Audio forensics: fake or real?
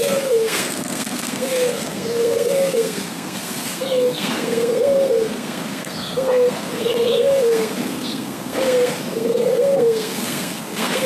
fake